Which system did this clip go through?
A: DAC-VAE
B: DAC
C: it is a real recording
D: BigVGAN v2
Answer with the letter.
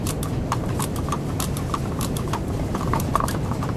D